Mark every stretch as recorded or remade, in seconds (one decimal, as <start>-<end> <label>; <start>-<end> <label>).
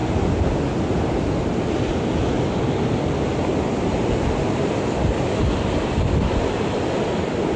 0.0-7.6 recorded